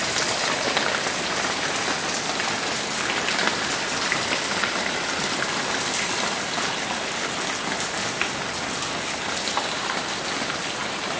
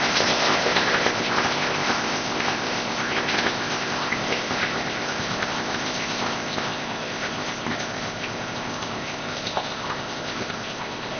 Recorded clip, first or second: first